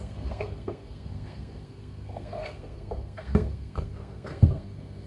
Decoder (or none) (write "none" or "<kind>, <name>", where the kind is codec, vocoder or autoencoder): codec, SNAC